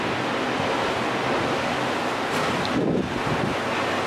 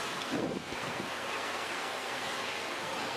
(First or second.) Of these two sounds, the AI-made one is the second